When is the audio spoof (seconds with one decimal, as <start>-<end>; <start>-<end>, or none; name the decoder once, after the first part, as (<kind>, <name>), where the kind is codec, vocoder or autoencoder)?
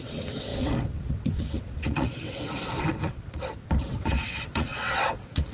0.0-5.5 (vocoder, WaveNeXt)